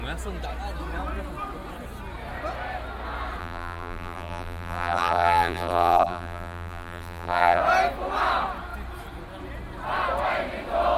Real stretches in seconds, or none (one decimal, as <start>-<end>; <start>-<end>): 0.0-3.4; 7.6-11.0